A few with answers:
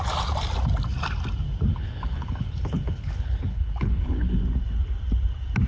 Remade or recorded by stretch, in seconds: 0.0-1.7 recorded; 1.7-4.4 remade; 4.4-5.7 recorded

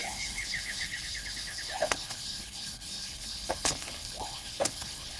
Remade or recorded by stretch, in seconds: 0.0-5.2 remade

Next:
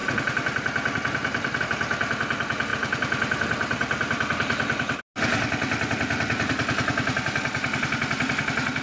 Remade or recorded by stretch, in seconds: 0.0-8.8 recorded